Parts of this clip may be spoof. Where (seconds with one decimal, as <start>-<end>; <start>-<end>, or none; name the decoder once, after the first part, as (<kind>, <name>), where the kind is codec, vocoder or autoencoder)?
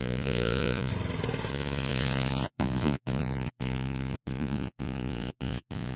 0.0-0.9 (vocoder, Vocos); 1.5-6.0